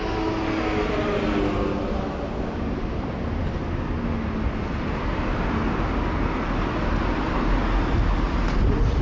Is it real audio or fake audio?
real